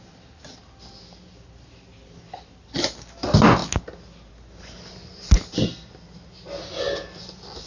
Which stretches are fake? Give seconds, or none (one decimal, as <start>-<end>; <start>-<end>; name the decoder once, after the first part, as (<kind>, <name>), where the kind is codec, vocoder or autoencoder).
none